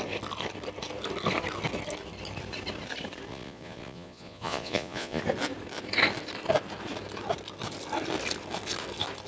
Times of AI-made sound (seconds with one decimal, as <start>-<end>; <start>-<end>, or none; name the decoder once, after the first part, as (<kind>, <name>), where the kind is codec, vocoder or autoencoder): 3.3-5.2 (vocoder, Vocos)